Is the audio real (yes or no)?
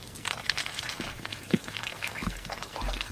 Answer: no